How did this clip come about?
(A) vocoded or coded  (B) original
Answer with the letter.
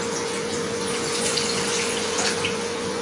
A